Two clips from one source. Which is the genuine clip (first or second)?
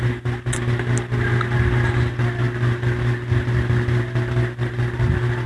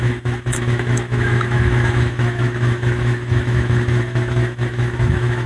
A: first